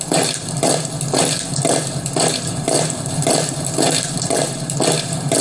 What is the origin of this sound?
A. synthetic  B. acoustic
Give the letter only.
B